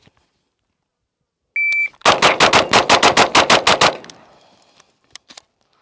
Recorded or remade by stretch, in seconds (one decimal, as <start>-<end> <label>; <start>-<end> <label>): 0.0-5.8 recorded